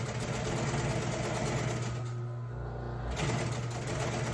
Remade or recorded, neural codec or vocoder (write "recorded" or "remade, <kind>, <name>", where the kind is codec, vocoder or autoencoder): recorded